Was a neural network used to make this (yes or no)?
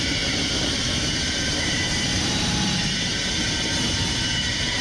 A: yes